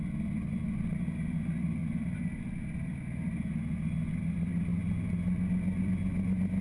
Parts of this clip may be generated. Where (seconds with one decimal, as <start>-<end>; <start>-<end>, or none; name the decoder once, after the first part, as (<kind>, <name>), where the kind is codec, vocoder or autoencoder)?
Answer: none